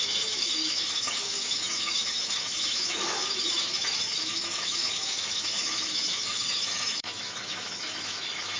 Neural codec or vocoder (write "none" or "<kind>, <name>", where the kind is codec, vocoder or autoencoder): autoencoder, DAC-VAE